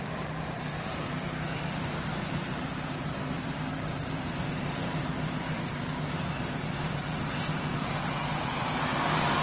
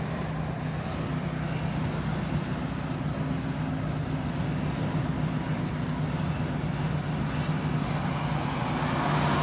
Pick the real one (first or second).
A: second